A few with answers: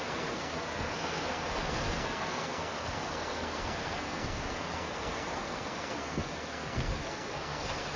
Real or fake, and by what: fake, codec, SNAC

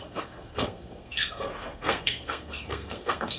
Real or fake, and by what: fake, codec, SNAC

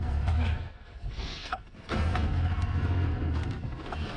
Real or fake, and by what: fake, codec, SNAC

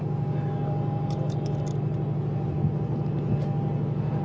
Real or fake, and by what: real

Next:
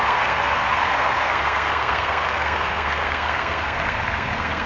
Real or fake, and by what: fake, codec, SNAC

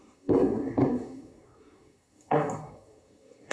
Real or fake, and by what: fake, codec, SNAC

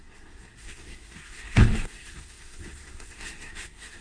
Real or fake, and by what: fake, codec, SNAC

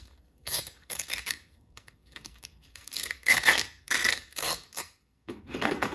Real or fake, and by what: fake, codec, SNAC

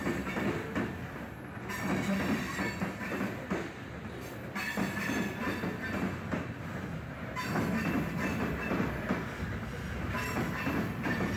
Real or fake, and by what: real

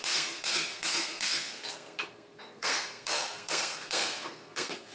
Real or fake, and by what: fake, codec, SNAC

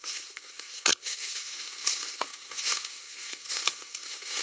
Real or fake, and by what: fake, codec, SNAC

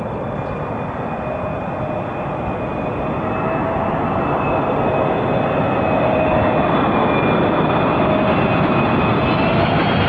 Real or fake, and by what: real